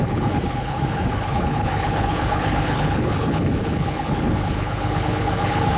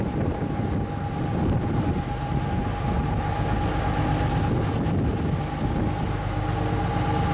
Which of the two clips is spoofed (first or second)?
first